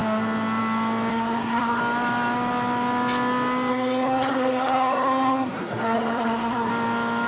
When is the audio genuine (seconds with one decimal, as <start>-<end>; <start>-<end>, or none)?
0.0-1.1; 1.8-3.7; 6.7-7.3